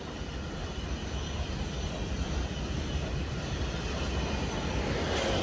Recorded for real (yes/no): yes